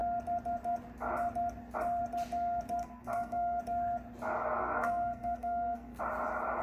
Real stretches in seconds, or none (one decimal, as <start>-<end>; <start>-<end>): 0.0-2.8; 3.6-4.6; 6.0-6.6